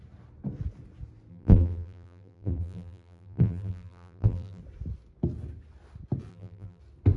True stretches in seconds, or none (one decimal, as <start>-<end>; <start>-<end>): 0.0-1.3; 4.6-6.3; 6.8-7.2

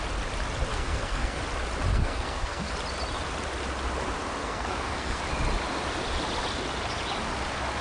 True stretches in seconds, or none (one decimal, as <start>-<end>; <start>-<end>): 0.0-0.7; 1.4-1.9; 2.7-4.4; 5.2-7.8

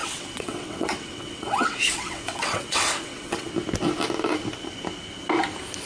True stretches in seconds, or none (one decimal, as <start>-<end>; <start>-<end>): 3.5-5.9

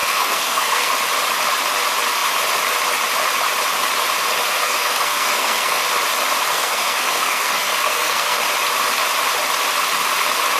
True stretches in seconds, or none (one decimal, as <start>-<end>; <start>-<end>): 0.9-4.6; 5.8-6.5; 8.4-10.6

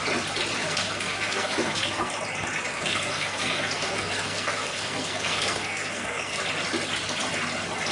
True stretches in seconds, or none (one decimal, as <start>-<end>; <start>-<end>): 0.0-0.6; 2.1-2.7; 6.4-7.9

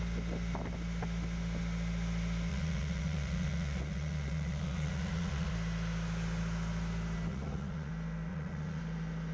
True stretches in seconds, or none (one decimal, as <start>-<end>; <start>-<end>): 0.0-2.5; 5.5-7.3; 7.9-8.3; 8.8-9.3